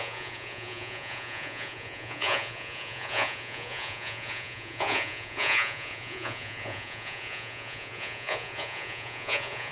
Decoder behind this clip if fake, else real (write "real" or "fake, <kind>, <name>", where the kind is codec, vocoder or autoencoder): fake, vocoder, Vocos